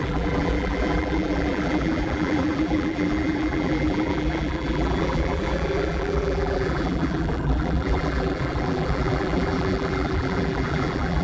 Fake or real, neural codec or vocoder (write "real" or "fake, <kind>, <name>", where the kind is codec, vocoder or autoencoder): fake, vocoder, BigVGAN v2